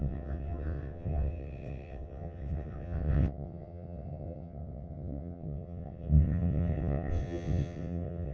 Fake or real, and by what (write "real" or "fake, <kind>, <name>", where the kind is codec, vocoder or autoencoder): fake, vocoder, WaveNeXt